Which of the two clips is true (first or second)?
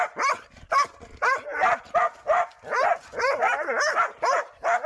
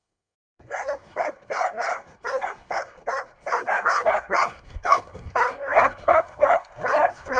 first